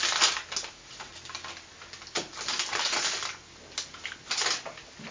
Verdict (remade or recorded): recorded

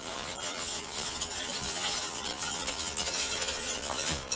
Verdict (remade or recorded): remade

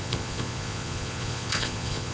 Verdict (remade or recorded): remade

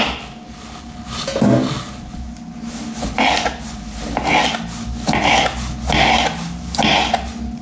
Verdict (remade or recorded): recorded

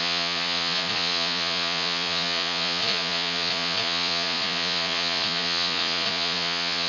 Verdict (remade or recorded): remade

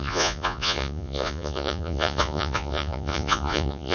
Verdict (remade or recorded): remade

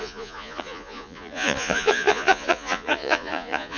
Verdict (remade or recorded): remade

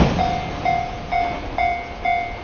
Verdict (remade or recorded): recorded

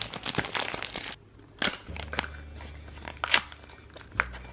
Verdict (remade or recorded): recorded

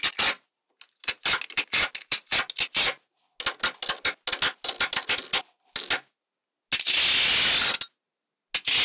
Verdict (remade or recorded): recorded